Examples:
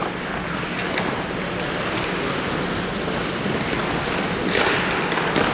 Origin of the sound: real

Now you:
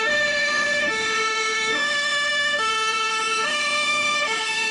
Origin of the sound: fake